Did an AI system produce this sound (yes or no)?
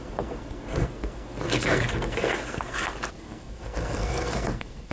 yes